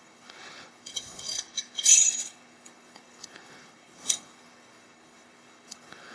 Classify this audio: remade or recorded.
remade